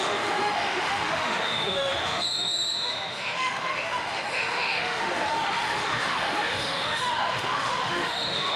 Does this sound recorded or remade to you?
remade